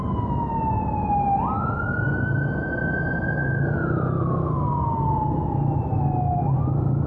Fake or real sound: real